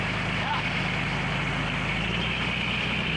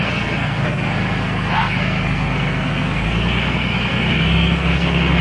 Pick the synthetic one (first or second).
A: second